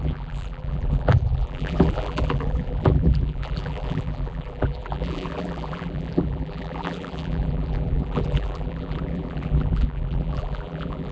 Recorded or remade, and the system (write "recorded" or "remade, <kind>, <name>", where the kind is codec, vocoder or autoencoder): remade, vocoder, BigVGAN v2